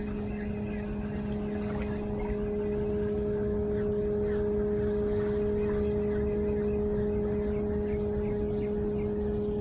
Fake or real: real